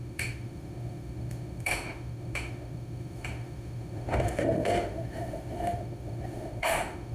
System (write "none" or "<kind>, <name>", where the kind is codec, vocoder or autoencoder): autoencoder, DAC-VAE